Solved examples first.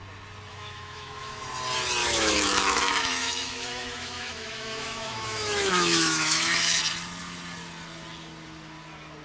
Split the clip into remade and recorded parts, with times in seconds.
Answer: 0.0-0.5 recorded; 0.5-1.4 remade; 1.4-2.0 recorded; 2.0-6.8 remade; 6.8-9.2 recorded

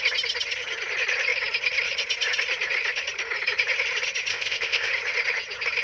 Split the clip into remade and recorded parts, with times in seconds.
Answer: 0.0-4.3 recorded; 4.3-4.9 remade; 4.9-5.8 recorded

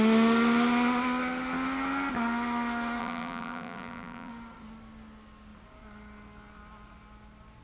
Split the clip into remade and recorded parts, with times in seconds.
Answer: 0.0-3.0 recorded; 3.0-4.3 remade; 4.3-7.6 recorded